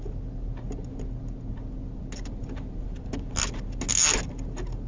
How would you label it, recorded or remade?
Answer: recorded